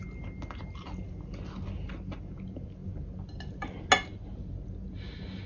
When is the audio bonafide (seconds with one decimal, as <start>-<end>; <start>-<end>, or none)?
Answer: 0.0-5.5